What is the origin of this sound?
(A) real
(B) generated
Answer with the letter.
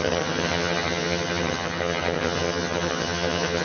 B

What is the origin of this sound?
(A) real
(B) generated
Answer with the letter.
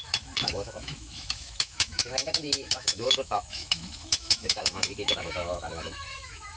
B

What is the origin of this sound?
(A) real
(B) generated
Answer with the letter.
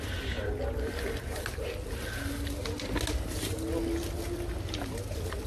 A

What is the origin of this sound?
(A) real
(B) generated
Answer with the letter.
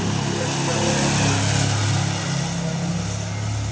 A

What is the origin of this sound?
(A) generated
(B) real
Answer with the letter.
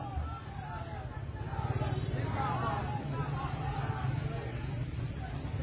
B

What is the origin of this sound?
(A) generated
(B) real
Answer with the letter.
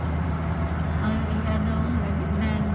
B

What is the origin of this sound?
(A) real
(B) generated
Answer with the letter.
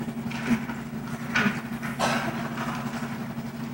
A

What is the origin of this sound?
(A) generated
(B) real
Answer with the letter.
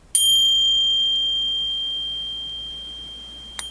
B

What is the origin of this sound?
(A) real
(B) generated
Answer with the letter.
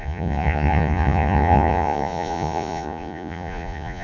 B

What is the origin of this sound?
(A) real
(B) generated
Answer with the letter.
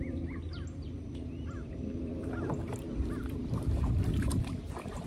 B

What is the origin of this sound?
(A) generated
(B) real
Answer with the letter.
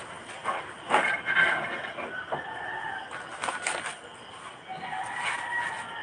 B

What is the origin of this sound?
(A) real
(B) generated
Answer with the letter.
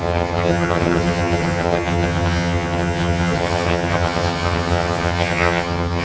B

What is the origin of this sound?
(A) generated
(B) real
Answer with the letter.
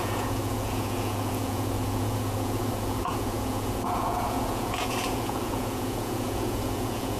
A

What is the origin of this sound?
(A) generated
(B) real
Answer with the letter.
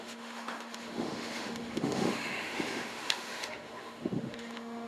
A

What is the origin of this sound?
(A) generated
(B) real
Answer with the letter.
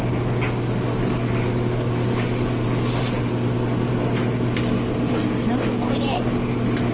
B